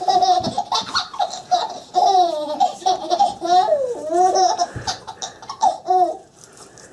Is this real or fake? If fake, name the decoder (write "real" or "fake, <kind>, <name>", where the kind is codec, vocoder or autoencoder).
fake, vocoder, BigVGAN v2